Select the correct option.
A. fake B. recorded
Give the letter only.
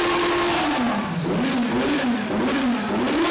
B